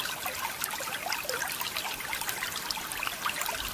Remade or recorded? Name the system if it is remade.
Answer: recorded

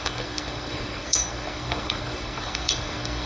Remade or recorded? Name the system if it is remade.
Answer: remade, codec, SNAC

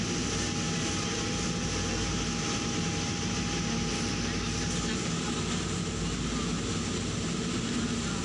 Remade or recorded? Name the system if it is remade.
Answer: recorded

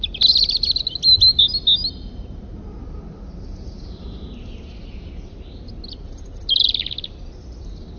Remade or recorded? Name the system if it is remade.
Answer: recorded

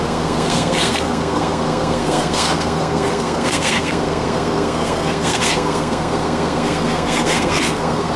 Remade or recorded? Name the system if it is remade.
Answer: remade, codec, SNAC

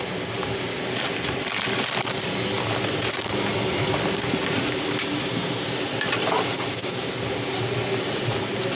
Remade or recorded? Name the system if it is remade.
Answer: recorded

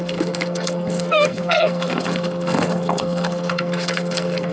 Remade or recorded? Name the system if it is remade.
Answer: remade, codec, SNAC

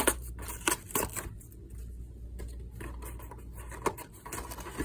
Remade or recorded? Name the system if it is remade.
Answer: recorded